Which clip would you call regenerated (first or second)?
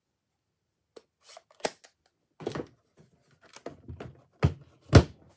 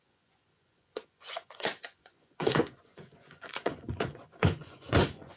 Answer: second